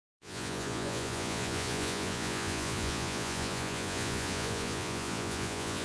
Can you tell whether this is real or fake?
fake